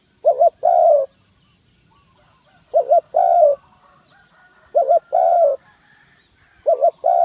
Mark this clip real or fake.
real